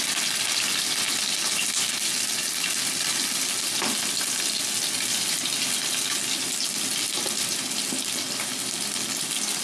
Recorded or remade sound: recorded